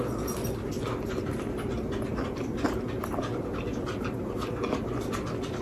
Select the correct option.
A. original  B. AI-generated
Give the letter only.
A